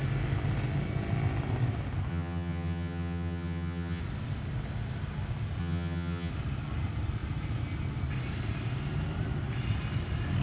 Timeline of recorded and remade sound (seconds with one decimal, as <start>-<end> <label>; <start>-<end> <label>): 0.0-2.1 recorded; 2.1-4.0 remade; 4.0-5.6 recorded; 5.6-6.3 remade; 6.3-10.4 recorded